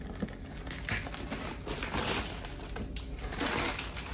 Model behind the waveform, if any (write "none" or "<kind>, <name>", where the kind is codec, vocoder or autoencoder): none